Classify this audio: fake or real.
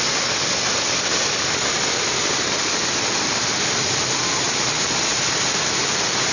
real